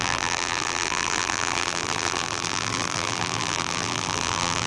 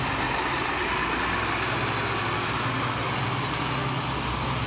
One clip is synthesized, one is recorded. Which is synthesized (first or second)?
first